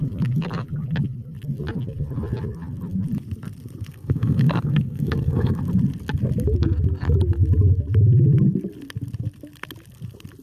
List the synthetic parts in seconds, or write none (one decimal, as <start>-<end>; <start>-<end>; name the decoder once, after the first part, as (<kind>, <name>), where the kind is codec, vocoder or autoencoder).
3.9-5.6 (codec, SNAC)